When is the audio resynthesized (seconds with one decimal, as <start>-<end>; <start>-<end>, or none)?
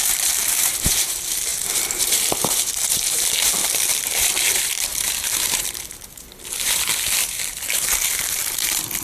0.0-9.0